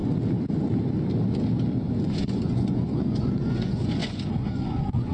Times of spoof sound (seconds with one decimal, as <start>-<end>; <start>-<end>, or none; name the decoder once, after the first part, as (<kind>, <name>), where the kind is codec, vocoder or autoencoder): 2.1-5.1 (vocoder, Vocos)